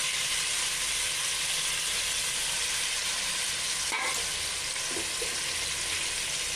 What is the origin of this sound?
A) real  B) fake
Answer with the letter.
A